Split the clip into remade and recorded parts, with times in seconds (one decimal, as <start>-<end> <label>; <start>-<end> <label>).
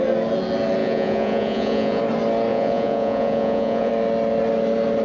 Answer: 0.0-0.8 recorded; 0.8-2.0 remade; 2.0-2.5 recorded; 2.5-3.9 remade; 3.9-5.0 recorded